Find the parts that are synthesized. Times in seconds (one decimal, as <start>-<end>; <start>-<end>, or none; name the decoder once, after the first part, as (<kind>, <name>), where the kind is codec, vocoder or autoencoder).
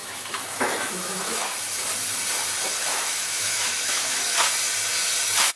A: 0.0-1.4 (autoencoder, DAC-VAE); 2.9-4.5